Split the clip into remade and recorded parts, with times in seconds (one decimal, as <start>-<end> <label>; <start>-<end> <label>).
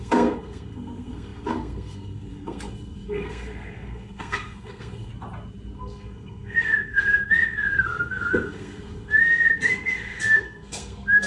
0.0-5.1 remade; 5.1-5.8 recorded; 5.8-11.3 remade